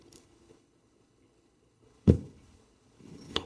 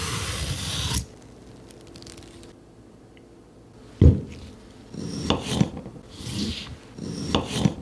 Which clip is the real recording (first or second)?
second